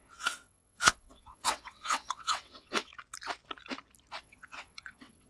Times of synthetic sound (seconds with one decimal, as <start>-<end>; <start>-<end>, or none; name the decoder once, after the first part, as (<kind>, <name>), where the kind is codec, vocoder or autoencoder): 0.0-2.9 (vocoder, WaveNeXt); 4.2-5.3